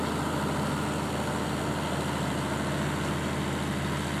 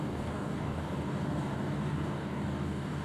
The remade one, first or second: second